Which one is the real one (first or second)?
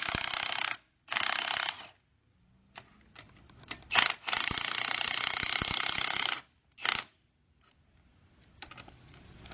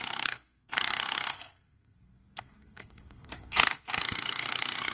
first